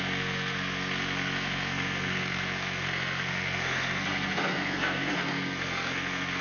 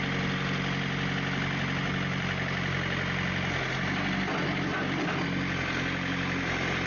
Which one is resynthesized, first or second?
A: first